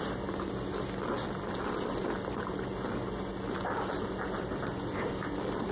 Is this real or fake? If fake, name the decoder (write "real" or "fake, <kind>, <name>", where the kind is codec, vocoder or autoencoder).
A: real